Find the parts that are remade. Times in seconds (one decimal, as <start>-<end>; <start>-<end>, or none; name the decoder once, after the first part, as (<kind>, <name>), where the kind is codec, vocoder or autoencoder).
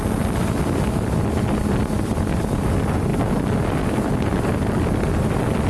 none